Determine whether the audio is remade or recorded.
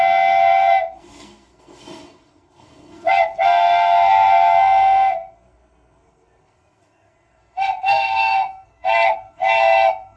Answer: remade